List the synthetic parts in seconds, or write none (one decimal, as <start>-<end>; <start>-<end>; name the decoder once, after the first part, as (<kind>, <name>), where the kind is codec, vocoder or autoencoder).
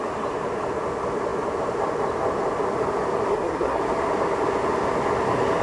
3.3-3.8 (codec, SNAC)